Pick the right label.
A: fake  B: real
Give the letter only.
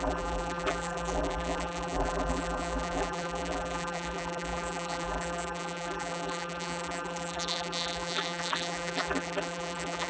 A